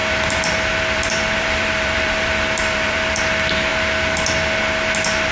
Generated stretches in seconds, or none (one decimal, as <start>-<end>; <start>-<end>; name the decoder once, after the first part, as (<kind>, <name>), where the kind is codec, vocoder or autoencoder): 0.0-3.2 (vocoder, BigVGAN v2)

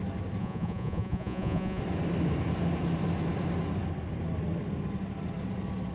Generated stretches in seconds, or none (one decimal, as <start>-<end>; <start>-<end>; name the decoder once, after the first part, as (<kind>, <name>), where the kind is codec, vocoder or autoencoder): 0.4-1.8 (vocoder, Vocos)

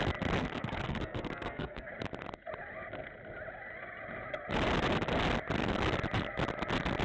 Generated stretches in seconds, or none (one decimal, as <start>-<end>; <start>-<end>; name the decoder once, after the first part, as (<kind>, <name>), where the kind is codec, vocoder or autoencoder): 0.4-1.9 (codec, SNAC)

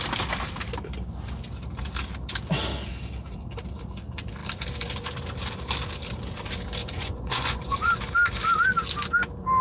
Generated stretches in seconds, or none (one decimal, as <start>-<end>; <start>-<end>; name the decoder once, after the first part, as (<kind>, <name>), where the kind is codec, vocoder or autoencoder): 6.8-7.9 (vocoder, Vocos)

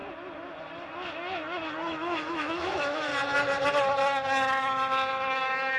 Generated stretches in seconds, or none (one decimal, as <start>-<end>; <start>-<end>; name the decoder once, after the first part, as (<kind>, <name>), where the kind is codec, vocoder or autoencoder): 1.9-3.1 (autoencoder, DAC-VAE); 5.3-5.8

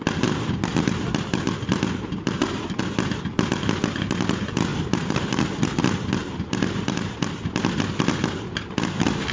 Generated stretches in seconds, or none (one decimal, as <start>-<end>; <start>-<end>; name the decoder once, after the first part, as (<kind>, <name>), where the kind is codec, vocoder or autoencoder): 4.7-5.2 (vocoder, BigVGAN v2); 6.2-7.6

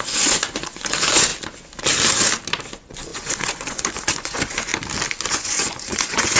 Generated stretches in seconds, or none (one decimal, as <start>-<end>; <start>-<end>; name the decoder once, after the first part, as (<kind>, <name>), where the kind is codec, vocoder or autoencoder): 0.0-1.3 (vocoder, Vocos); 2.7-4.7; 5.3-6.4

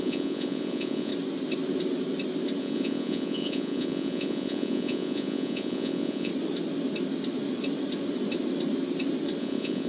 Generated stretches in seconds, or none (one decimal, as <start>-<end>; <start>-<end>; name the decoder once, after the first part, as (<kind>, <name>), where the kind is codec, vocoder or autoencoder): 0.0-1.1 (vocoder, Vocos); 2.6-6.3; 9.4-9.9